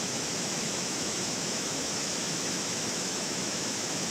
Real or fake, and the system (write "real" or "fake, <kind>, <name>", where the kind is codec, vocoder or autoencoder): fake, autoencoder, DAC-VAE